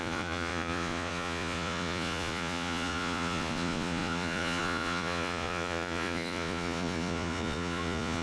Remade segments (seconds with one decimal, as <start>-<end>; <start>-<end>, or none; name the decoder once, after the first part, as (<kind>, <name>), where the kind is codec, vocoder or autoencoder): 0.0-8.2 (vocoder, Vocos)